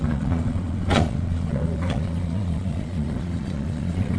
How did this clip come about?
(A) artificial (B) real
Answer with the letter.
A